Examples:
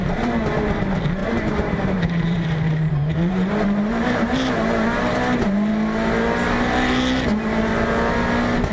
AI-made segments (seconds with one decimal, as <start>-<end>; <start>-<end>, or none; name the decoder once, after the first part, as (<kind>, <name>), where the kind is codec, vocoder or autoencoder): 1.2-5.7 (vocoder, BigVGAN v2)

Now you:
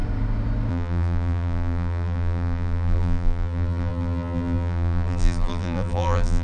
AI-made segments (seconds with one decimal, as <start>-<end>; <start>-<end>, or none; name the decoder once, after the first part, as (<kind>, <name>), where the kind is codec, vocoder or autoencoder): 0.7-6.4 (vocoder, BigVGAN v2)

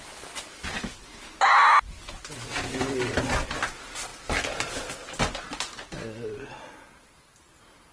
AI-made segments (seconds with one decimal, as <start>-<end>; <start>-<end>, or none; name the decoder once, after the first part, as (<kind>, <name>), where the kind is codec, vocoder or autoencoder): none

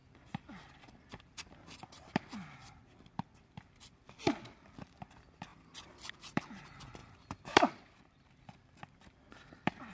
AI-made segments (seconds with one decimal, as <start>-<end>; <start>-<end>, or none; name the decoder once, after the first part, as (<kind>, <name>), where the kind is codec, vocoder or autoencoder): 0.0-9.9 (vocoder, BigVGAN v2)

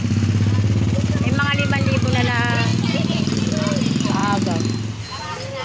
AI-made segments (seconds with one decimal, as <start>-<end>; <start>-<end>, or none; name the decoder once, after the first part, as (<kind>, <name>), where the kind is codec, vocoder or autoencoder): none